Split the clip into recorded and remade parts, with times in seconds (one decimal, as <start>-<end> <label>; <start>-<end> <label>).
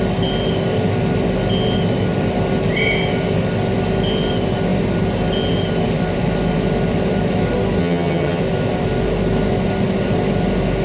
0.0-7.8 recorded; 7.8-8.4 remade; 8.4-10.8 recorded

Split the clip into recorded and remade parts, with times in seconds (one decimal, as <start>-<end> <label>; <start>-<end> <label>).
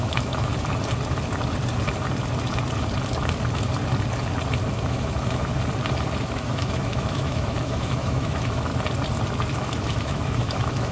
0.0-0.5 remade; 0.5-4.7 recorded; 4.7-5.5 remade; 5.5-6.2 recorded; 6.2-8.7 remade; 8.7-9.5 recorded; 9.5-10.9 remade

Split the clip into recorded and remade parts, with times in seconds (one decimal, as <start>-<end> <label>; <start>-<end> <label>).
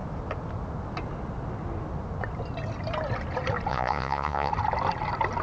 0.0-3.7 recorded; 3.7-4.5 remade; 4.5-5.4 recorded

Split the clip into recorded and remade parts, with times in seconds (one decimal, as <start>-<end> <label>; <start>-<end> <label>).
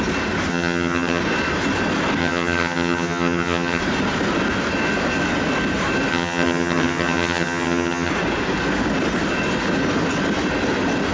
0.0-0.5 recorded; 0.5-1.2 remade; 1.2-2.2 recorded; 2.2-3.8 remade; 3.8-6.1 recorded; 6.1-8.1 remade; 8.1-11.1 recorded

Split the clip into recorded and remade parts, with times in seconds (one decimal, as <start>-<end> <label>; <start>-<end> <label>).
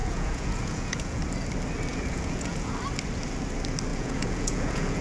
0.0-1.2 remade; 1.2-1.9 recorded; 1.9-2.7 remade; 2.7-3.9 recorded; 3.9-5.0 remade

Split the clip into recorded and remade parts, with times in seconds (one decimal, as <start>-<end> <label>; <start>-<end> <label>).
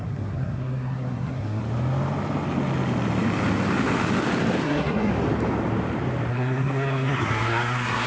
0.0-1.6 remade; 1.6-4.6 recorded; 4.6-5.1 remade; 5.1-6.3 recorded; 6.3-8.1 remade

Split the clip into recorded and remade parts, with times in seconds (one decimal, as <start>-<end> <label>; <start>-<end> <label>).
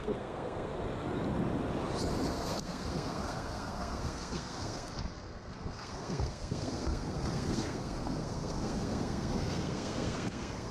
0.0-0.7 remade; 0.7-2.3 recorded; 2.3-10.7 remade